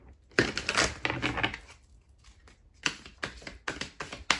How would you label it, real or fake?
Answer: real